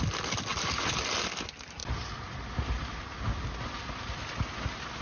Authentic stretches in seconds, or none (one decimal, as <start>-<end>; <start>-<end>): 0.0-5.0